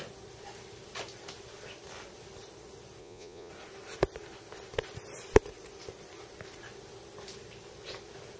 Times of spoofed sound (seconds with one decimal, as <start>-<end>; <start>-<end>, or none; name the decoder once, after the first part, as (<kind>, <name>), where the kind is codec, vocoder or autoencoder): 3.0-3.5 (vocoder, Vocos)